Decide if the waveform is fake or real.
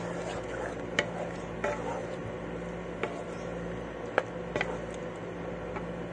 real